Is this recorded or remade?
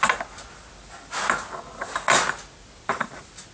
recorded